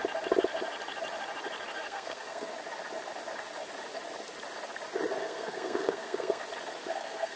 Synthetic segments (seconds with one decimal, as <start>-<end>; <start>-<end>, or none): 1.7-2.5; 5.2-6.4; 6.9-7.4